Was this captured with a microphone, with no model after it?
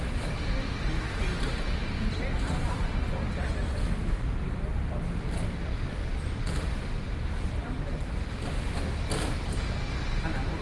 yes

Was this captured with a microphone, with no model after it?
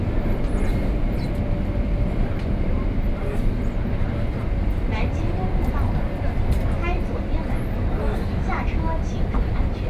yes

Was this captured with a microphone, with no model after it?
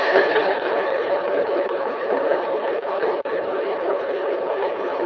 no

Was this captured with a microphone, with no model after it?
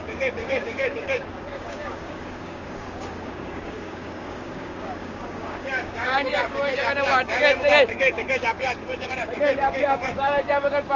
no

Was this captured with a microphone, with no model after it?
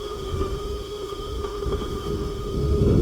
no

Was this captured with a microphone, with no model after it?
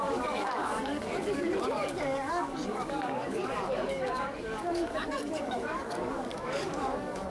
no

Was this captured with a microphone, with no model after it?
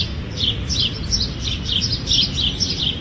yes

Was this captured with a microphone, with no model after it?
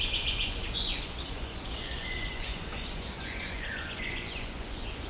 no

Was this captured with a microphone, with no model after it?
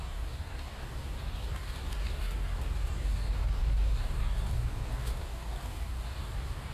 no